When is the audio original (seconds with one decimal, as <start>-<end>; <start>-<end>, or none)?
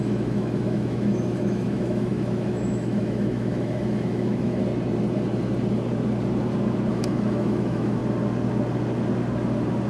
4.6-6.9; 8.0-9.9